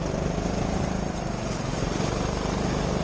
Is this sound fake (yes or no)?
no